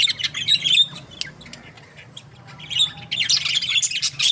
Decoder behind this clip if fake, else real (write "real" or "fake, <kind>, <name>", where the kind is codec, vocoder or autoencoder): real